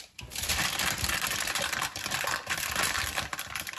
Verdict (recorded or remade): remade